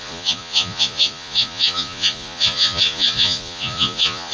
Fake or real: fake